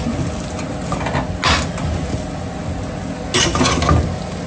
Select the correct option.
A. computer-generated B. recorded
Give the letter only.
B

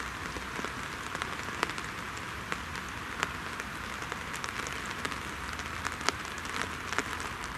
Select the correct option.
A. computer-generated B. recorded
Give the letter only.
B